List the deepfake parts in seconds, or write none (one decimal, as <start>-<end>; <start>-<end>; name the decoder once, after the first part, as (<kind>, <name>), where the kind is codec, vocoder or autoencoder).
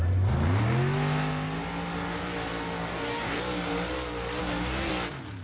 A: 2.9-3.4 (codec, DAC); 4.4-4.9